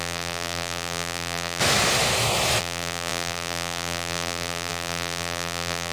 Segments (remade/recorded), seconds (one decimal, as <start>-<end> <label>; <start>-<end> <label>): 0.0-1.6 remade; 1.6-2.6 recorded; 2.6-5.9 remade